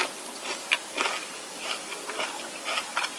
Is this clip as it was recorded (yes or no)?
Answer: yes